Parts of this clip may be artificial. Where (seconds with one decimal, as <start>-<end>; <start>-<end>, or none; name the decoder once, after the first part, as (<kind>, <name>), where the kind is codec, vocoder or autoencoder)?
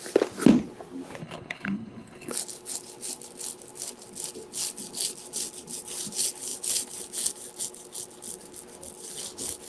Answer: 1.2-2.3 (codec, HILCodec)